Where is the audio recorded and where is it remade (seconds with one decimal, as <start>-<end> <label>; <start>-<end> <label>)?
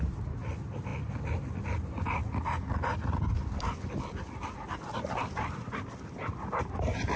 0.0-7.2 recorded